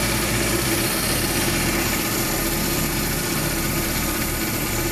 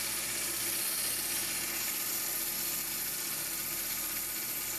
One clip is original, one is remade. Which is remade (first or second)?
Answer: first